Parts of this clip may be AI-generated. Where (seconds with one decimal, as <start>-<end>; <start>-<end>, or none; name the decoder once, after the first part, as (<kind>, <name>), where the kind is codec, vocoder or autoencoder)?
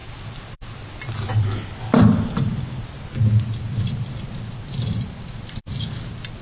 none